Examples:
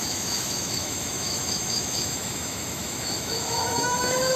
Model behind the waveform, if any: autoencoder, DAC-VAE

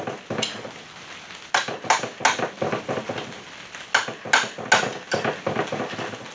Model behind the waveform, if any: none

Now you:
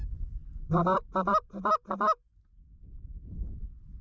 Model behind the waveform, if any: none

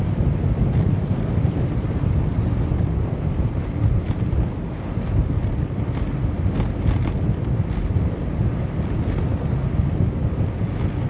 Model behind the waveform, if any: none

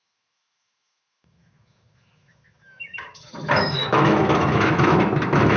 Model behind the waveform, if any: autoencoder, DAC-VAE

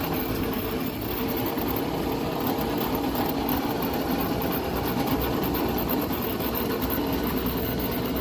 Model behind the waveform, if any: none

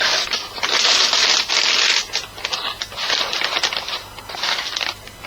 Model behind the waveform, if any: none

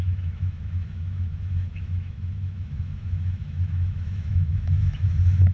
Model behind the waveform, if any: autoencoder, DAC-VAE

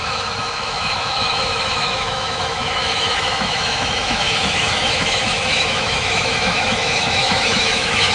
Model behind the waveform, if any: autoencoder, DAC-VAE